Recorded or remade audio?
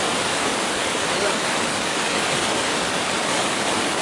remade